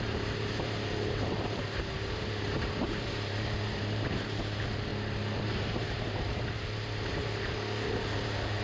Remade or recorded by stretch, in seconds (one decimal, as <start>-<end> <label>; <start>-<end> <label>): 0.0-4.9 remade; 4.9-5.4 recorded; 5.4-8.6 remade